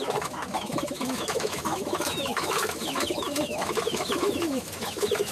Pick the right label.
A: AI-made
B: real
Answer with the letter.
A